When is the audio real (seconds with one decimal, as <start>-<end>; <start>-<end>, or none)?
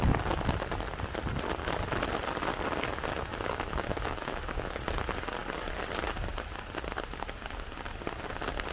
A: 0.0-3.3; 4.8-8.7